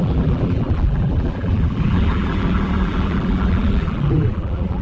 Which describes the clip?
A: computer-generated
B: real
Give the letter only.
A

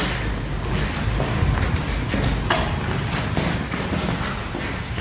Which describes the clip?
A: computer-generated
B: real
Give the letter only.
B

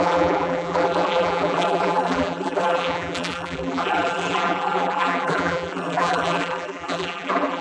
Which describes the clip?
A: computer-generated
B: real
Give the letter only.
A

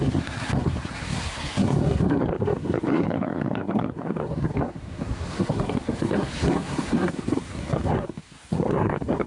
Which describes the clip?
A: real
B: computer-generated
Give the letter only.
B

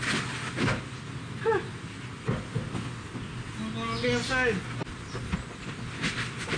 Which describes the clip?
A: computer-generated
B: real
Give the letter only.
B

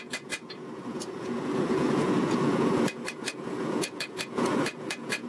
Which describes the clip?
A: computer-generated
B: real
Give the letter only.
A